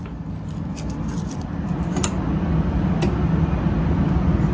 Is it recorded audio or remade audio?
recorded